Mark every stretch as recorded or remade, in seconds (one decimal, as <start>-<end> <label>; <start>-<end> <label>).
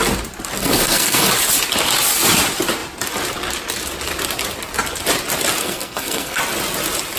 0.0-0.6 recorded; 0.6-1.3 remade; 1.3-5.6 recorded; 5.6-6.4 remade; 6.4-7.2 recorded